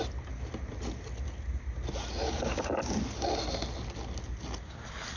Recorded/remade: recorded